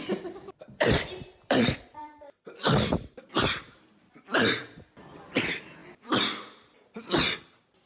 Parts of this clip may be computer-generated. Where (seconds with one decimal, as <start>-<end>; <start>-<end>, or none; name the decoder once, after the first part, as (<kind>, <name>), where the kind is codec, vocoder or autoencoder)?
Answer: 0.0-5.8 (vocoder, BigVGAN v2)